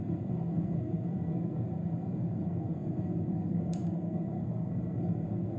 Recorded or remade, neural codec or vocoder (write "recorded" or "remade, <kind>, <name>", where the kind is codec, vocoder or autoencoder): remade, codec, SNAC